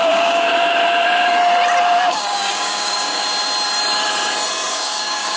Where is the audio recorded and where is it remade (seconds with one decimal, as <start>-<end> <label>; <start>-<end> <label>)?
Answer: 0.0-0.5 remade; 0.5-2.1 recorded; 2.1-3.2 remade; 3.2-4.7 recorded; 4.7-5.4 remade